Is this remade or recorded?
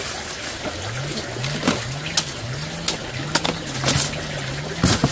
recorded